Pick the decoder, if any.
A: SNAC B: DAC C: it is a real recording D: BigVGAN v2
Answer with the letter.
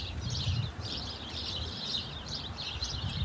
D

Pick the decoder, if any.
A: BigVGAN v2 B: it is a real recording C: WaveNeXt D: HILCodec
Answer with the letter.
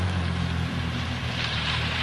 A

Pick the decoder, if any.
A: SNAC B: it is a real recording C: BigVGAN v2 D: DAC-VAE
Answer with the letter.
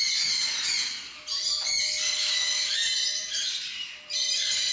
B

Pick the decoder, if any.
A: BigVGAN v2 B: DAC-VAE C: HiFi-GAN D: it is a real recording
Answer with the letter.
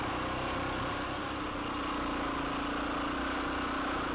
D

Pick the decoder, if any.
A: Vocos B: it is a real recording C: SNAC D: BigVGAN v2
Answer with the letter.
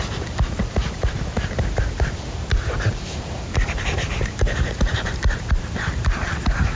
D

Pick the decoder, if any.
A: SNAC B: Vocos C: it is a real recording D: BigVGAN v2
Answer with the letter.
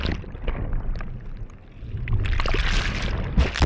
C